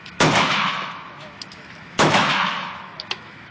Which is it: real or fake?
fake